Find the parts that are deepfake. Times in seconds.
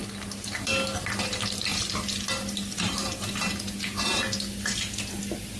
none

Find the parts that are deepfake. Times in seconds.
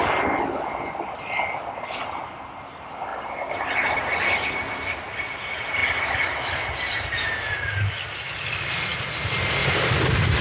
5.8-8.7 (vocoder, BigVGAN v2); 9.6-10.4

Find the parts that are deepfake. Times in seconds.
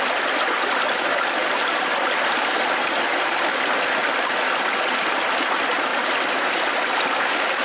0.0-5.9 (vocoder, BigVGAN v2); 6.6-7.6